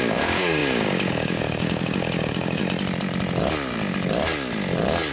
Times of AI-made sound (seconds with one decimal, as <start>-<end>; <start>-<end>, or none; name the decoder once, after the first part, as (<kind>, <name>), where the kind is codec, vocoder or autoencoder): 0.0-2.6 (codec, DAC)